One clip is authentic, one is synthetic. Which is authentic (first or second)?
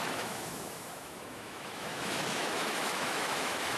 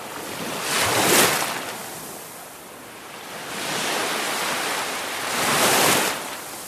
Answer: second